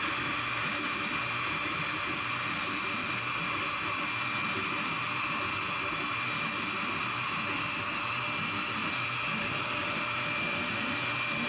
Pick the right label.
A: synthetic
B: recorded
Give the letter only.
B